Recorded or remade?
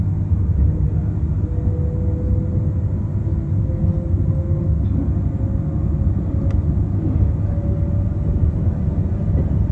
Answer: recorded